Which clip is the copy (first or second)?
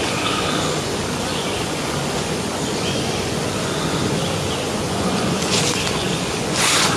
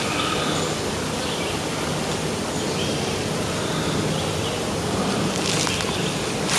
first